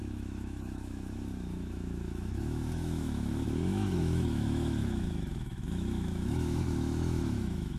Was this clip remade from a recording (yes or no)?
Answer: yes